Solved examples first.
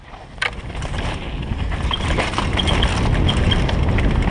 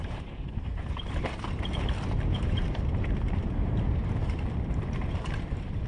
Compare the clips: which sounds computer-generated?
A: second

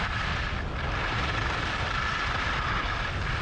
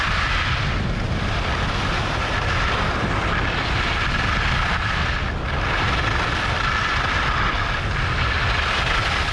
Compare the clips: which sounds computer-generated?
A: first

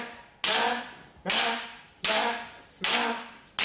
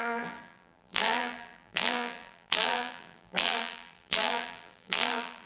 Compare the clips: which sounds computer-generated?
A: second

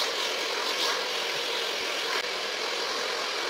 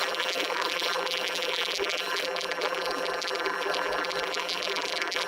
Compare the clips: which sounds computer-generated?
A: second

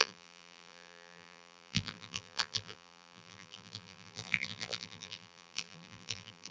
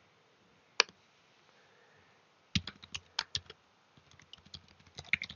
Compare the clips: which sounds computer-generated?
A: first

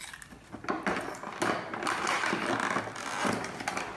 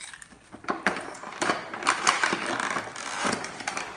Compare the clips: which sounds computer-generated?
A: second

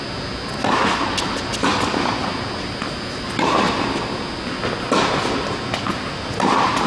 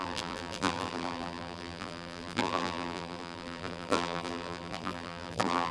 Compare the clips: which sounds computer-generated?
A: second